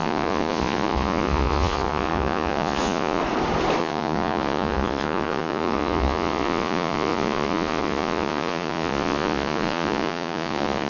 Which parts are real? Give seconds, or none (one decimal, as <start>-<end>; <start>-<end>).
3.2-3.8

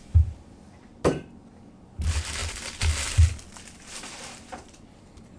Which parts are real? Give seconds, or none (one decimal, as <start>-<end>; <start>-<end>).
0.9-1.8; 2.4-3.8

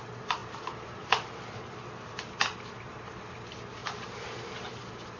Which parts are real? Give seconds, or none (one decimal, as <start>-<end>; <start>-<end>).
0.0-5.2

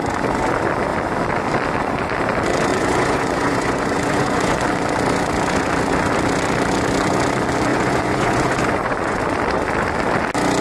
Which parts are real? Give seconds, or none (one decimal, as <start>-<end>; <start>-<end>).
0.0-2.7; 4.7-7.7; 9.2-10.6

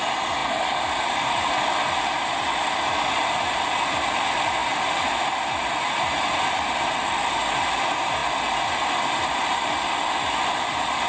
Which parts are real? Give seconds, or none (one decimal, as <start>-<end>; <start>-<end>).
0.0-11.1

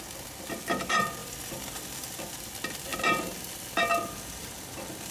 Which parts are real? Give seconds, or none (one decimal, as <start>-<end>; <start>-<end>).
0.0-1.2; 2.1-5.1

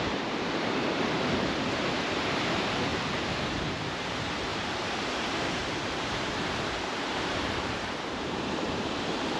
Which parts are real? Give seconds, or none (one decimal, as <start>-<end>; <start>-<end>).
2.9-4.0

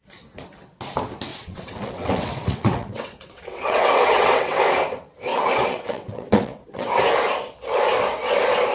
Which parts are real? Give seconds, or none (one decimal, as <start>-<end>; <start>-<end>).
0.0-1.3; 4.6-5.3; 7.0-8.7